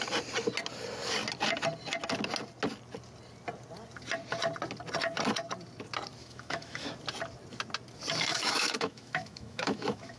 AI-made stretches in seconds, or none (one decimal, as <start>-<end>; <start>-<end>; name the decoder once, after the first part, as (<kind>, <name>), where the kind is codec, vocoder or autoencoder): 6.2-6.9 (autoencoder, DAC-VAE); 8.3-10.2